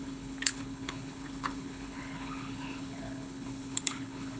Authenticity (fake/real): fake